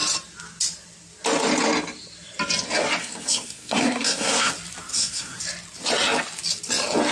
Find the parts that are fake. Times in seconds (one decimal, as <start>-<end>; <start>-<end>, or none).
3.0-4.5; 4.9-5.4